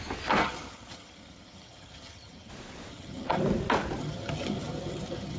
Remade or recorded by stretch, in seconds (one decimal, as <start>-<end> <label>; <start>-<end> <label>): 0.0-0.4 recorded; 0.4-2.5 remade; 2.5-2.9 recorded; 2.9-3.4 remade; 3.4-4.0 recorded; 4.0-5.4 remade